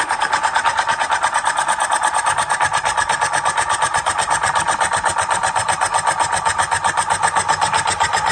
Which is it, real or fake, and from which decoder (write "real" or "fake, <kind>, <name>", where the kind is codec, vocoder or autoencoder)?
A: real